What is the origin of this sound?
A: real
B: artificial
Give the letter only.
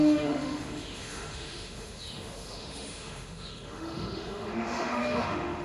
B